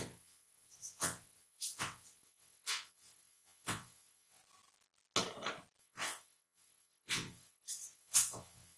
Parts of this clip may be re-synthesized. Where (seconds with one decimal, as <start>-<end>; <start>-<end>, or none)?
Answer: 0.0-4.4; 5.8-8.8